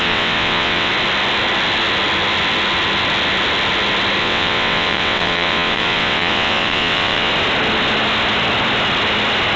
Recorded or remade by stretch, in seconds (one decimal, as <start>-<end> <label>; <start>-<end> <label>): 0.0-0.9 remade; 0.9-4.2 recorded; 4.2-7.3 remade; 7.3-9.6 recorded